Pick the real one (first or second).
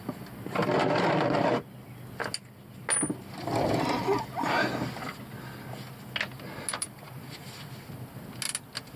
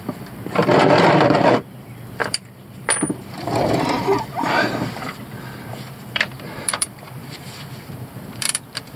first